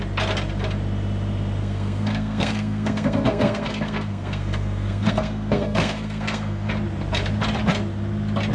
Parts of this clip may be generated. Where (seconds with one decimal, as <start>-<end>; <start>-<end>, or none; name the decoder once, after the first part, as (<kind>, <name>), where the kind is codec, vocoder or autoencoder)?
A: 1.6-6.7 (codec, SNAC)